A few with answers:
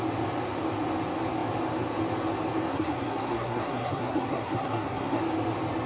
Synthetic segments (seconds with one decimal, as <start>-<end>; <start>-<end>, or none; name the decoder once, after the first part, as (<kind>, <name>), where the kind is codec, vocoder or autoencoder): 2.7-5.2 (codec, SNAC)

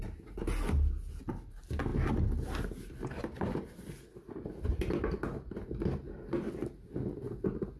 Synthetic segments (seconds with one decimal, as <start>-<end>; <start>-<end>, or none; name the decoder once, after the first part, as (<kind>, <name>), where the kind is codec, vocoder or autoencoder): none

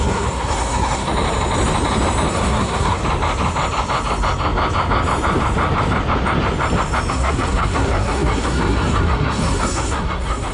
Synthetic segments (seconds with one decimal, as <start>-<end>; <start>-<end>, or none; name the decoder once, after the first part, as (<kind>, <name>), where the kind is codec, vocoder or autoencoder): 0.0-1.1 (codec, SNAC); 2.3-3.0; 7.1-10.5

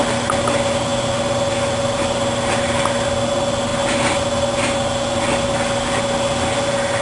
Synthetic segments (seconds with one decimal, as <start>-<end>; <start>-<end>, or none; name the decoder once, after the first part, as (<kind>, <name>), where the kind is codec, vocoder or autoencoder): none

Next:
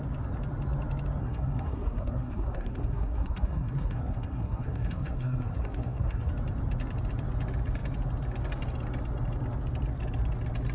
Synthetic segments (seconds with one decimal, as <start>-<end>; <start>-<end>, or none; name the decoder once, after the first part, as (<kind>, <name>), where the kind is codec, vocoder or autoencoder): 1.2-6.3 (codec, SNAC)